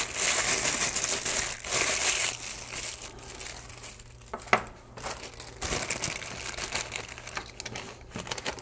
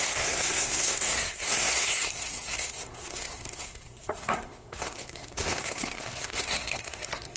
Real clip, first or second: first